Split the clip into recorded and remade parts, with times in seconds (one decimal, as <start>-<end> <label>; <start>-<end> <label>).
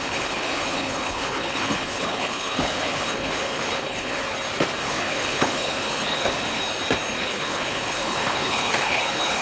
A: 0.0-4.2 remade; 4.2-4.8 recorded; 4.8-6.6 remade; 6.6-7.2 recorded; 7.2-9.4 remade